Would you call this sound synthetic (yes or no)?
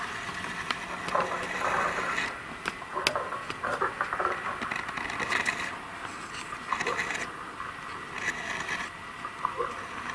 no